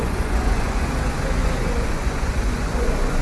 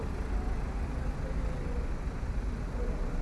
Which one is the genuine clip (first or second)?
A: second